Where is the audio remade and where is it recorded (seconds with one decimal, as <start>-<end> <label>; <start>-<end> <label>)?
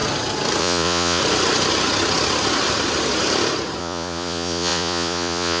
0.0-0.6 recorded; 0.6-1.2 remade; 1.2-3.8 recorded; 3.8-5.6 remade